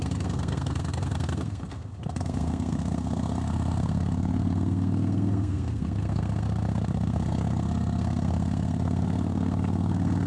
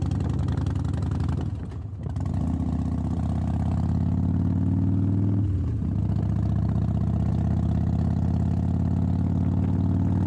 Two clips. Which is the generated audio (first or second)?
first